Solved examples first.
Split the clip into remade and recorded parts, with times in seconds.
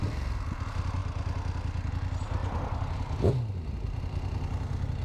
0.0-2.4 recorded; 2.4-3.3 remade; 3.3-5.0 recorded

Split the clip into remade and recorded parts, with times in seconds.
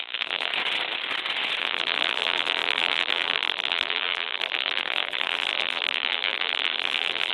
0.0-0.5 remade; 0.5-1.6 recorded; 1.6-7.3 remade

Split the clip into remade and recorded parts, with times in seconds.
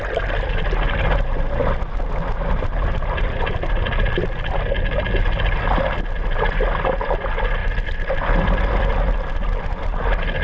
0.0-10.4 recorded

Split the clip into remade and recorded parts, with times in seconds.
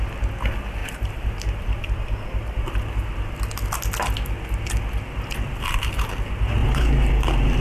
0.0-0.8 recorded; 0.8-2.7 remade; 2.7-6.6 recorded; 6.6-7.6 remade